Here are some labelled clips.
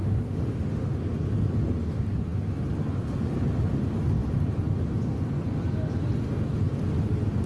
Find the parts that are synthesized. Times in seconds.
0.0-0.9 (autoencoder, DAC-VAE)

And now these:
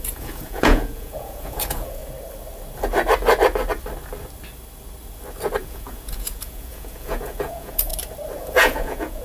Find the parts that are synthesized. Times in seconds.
0.0-2.0 (vocoder, Vocos); 5.6-7.9; 8.4-9.2

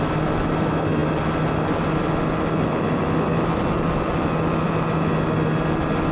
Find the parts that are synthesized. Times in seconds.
none

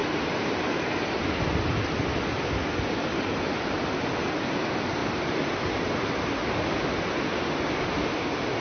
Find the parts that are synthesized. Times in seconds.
0.0-1.8 (vocoder, BigVGAN v2); 5.0-5.5